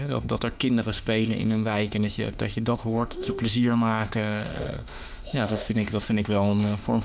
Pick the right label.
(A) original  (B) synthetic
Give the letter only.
B